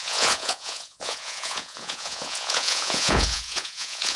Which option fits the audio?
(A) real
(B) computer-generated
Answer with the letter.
B